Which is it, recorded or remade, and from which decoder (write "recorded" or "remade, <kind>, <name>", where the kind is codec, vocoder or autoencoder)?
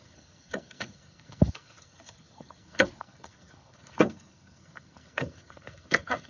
remade, codec, SNAC